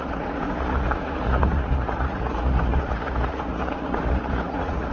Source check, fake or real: fake